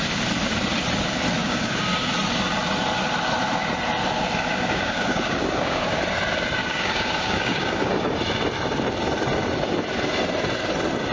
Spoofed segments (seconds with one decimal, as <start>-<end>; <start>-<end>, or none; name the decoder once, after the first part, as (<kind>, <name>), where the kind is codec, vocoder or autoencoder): 1.4-2.1 (codec, DAC); 4.5-6.0; 6.6-7.9

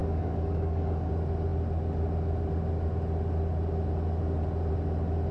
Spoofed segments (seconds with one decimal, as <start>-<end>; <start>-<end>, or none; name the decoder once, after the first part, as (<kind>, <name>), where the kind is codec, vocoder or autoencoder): 0.0-1.1 (codec, DAC)

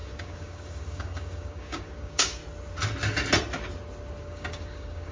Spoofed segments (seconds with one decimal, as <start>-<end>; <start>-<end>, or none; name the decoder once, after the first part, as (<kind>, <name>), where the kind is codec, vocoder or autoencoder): 0.0-2.4 (codec, DAC); 4.2-5.1

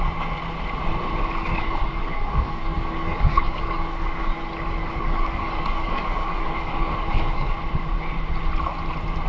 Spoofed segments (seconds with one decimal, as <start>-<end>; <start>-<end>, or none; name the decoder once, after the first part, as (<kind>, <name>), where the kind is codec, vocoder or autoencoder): 1.4-4.2 (codec, DAC); 4.8-7.6